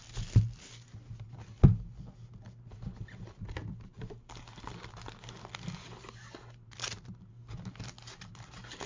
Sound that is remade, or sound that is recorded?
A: recorded